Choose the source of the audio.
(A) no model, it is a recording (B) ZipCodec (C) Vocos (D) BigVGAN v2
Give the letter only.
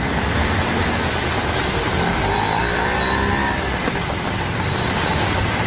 A